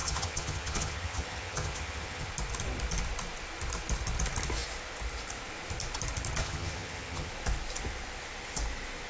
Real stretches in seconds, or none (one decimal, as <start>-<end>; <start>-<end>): 2.3-6.4; 7.3-9.1